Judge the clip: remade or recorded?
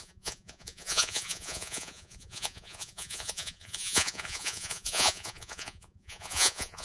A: remade